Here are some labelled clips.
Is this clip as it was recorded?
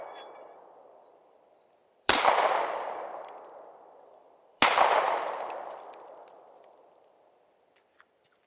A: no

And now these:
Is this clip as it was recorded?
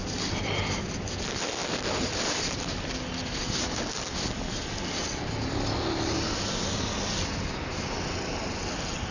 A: yes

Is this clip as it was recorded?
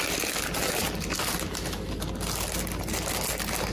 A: yes